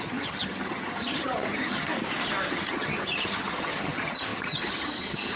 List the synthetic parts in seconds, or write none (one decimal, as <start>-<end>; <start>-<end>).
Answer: 0.0-1.9; 2.5-5.4